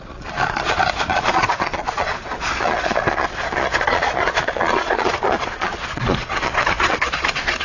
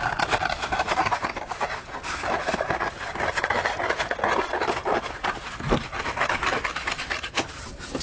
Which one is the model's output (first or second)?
first